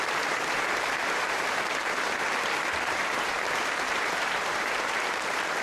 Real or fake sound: fake